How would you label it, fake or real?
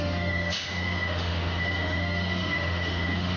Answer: fake